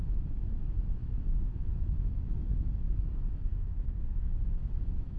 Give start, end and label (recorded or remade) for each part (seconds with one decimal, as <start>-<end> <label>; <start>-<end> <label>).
0.0-1.0 recorded; 1.0-2.2 remade; 2.2-3.5 recorded; 3.5-5.2 remade